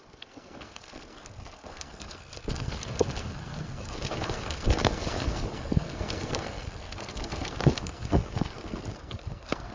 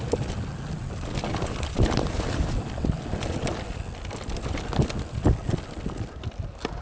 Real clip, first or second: second